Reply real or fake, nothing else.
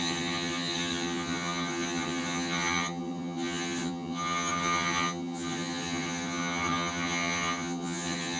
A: fake